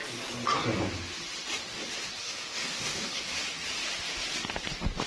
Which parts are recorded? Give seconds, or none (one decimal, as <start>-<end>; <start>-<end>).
0.0-2.2; 3.2-5.1